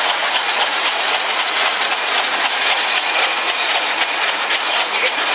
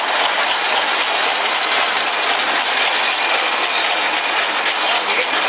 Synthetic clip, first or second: first